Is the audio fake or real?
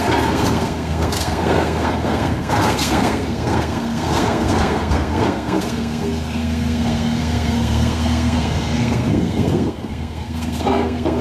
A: fake